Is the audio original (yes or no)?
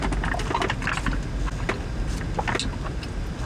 yes